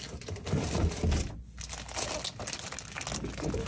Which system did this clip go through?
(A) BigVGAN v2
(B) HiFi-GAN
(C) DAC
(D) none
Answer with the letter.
D